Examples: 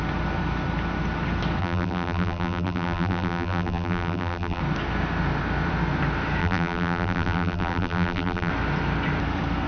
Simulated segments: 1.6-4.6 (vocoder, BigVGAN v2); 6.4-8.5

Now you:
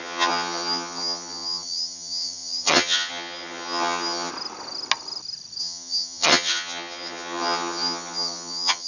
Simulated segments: 0.0-4.3 (vocoder, HiFi-GAN); 5.6-8.9